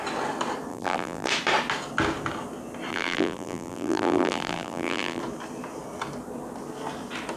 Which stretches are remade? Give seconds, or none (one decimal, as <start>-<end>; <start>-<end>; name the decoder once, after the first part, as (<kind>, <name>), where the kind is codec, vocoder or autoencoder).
0.7-1.3 (vocoder, BigVGAN v2); 2.9-5.2